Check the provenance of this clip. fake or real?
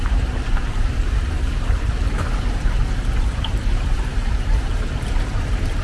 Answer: fake